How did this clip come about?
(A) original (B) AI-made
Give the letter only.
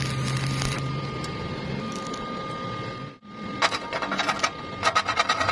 A